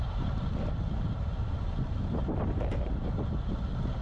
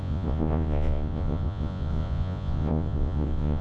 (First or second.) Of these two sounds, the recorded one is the first